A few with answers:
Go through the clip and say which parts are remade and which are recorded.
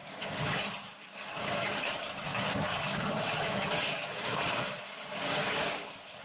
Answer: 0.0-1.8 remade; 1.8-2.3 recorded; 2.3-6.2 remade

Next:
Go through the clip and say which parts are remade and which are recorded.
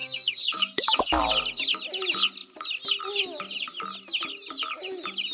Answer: 0.0-1.2 remade; 1.2-5.3 recorded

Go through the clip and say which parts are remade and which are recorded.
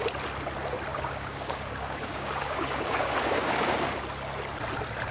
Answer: 0.0-0.9 recorded; 0.9-4.0 remade; 4.0-5.1 recorded